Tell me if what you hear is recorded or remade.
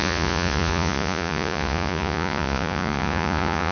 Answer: remade